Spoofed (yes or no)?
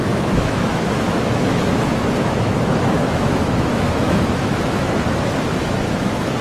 yes